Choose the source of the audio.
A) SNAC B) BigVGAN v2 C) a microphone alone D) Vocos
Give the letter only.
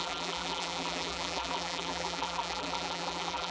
B